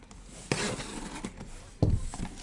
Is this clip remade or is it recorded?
recorded